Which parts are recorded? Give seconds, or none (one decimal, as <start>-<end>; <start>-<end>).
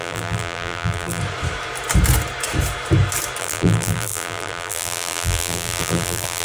1.2-3.4